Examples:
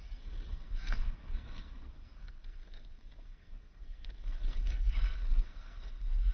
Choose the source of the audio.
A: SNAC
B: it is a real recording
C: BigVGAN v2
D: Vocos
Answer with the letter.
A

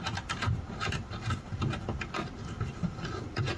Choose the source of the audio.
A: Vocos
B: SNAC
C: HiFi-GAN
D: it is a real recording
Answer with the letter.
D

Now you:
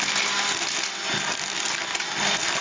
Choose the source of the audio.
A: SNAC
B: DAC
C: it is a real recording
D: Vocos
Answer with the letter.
C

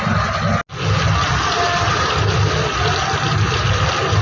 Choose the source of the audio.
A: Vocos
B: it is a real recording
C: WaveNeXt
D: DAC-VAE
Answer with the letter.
B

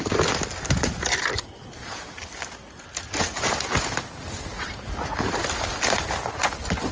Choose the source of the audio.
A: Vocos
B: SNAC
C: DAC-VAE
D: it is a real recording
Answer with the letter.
D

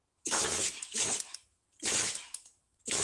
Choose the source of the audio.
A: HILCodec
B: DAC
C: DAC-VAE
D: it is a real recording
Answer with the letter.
C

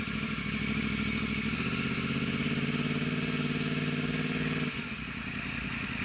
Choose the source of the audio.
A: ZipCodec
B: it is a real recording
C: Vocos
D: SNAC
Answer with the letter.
B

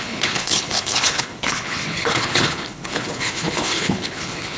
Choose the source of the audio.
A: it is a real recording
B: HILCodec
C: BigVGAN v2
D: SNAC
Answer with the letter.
B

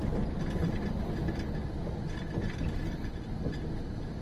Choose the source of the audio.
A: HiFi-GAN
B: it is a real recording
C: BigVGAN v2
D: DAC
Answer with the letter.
B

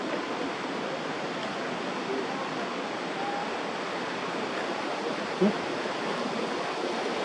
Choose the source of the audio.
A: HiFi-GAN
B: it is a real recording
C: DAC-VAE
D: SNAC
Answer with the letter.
B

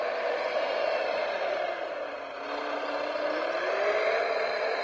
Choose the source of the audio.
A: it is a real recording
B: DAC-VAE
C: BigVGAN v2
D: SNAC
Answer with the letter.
A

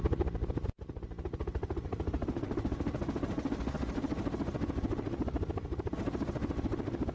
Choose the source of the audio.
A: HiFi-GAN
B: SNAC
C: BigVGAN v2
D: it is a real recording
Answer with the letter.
D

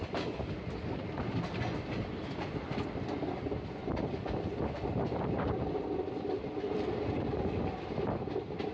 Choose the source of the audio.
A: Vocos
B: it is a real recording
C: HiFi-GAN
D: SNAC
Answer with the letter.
B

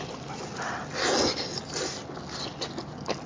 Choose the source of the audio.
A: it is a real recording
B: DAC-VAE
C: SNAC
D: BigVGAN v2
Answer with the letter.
A